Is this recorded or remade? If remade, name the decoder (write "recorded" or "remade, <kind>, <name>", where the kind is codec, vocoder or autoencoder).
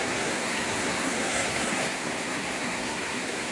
remade, codec, SNAC